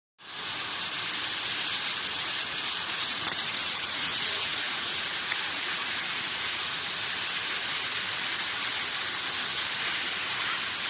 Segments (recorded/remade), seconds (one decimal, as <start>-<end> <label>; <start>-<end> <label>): 0.0-2.1 recorded; 2.1-7.0 remade; 7.0-10.9 recorded